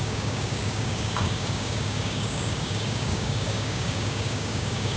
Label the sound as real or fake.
fake